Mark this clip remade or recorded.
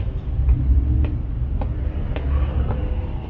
recorded